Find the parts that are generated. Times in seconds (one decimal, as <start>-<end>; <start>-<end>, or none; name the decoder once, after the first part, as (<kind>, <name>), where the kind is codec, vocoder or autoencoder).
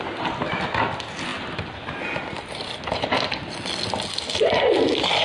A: none